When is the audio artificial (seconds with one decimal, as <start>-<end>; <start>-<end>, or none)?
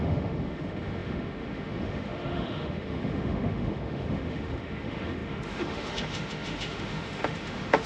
0.0-7.9